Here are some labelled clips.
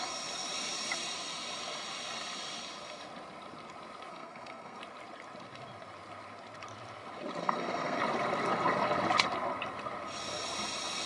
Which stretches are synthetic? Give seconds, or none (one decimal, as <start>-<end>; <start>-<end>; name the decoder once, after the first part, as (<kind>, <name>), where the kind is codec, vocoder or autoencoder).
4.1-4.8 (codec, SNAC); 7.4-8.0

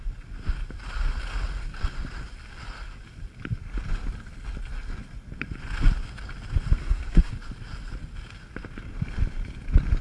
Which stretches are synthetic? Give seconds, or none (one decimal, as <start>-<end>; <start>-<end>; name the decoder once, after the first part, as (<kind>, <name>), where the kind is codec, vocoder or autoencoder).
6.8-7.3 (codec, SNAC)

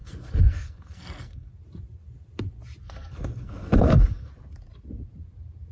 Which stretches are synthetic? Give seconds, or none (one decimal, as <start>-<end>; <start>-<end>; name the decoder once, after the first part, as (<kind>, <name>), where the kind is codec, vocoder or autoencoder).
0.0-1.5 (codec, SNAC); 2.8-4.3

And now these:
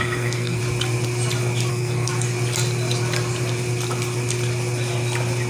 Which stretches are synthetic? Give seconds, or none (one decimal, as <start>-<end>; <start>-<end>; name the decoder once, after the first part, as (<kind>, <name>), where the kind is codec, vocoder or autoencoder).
0.0-0.6 (codec, SNAC); 1.7-2.1

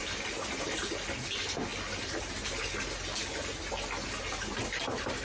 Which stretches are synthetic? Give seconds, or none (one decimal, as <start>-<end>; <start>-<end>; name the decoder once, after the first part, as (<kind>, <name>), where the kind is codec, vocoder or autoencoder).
none

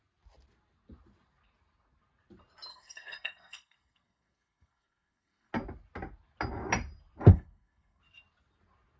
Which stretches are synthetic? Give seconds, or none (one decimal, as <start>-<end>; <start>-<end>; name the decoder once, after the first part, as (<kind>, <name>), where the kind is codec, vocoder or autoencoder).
2.7-5.5 (codec, SNAC); 7.3-8.0

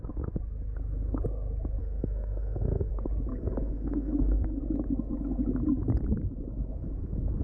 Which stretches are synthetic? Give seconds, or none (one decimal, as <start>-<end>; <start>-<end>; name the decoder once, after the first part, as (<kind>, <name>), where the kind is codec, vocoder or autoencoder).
1.8-2.9 (codec, SNAC); 3.3-4.6